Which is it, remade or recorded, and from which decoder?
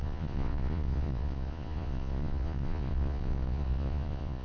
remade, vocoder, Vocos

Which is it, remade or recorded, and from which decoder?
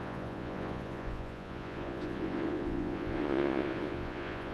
remade, vocoder, Vocos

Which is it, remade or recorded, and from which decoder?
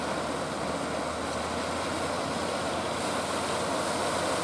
recorded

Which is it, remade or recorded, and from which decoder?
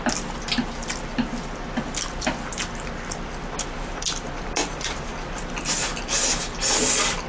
recorded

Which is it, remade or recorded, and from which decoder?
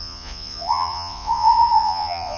remade, vocoder, Vocos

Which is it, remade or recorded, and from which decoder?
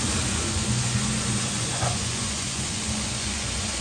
remade, vocoder, Vocos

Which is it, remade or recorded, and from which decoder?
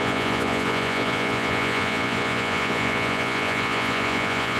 remade, vocoder, Vocos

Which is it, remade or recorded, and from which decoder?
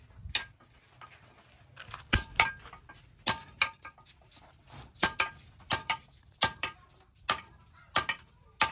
recorded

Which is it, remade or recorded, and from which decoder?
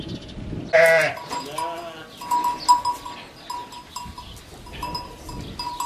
recorded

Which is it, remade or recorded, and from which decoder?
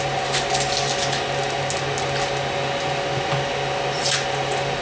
recorded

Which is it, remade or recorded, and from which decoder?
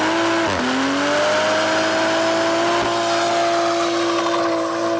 recorded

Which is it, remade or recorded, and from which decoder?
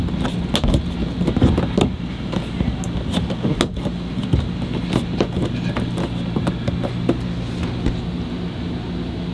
recorded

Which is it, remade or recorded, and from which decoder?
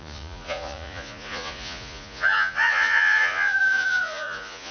remade, vocoder, Vocos